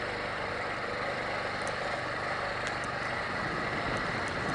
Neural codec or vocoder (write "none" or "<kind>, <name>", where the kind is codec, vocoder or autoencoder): none